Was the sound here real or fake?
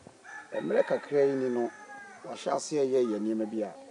real